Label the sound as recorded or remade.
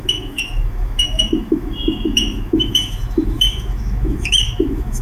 remade